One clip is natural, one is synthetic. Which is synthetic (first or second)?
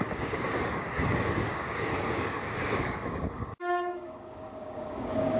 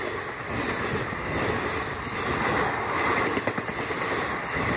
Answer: first